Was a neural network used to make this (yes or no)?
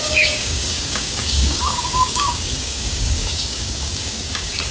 yes